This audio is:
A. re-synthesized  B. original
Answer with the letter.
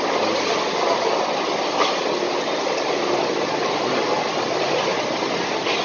B